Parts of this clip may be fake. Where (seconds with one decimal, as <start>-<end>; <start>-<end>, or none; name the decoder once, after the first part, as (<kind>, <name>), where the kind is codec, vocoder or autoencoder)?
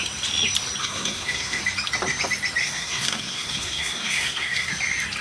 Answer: 0.8-1.6 (codec, SNAC); 2.6-4.7